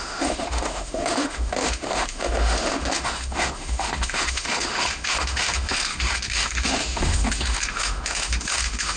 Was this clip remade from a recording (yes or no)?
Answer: yes